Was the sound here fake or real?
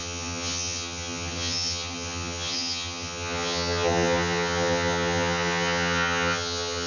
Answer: fake